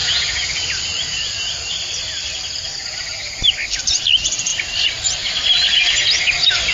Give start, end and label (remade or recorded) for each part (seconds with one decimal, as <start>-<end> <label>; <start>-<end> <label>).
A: 0.0-3.8 remade; 3.8-6.7 recorded